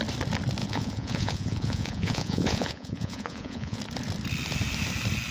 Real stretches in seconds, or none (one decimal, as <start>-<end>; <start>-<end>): 0.0-0.6; 3.8-5.3